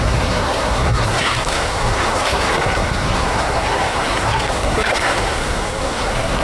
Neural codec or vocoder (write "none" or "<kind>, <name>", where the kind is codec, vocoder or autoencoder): codec, SNAC